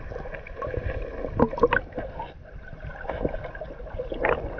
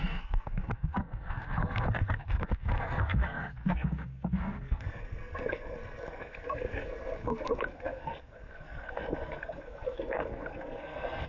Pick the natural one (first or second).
first